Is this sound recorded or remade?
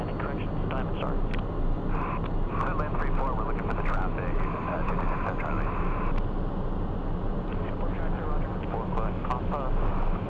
recorded